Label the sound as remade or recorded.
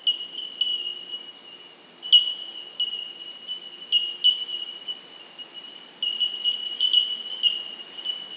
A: recorded